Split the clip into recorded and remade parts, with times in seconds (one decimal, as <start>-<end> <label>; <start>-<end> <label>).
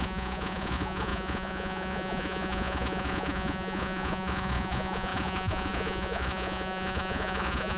0.0-7.8 remade